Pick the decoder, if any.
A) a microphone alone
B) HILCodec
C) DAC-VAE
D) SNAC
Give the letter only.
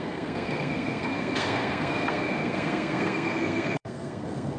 D